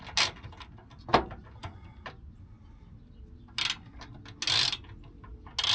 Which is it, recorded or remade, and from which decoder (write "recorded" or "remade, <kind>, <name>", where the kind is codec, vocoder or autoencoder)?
recorded